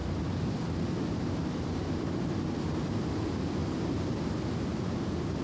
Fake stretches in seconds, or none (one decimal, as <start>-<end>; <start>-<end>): 0.0-3.6